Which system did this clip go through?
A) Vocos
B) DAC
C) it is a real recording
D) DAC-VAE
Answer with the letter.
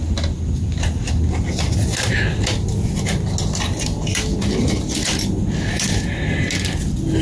C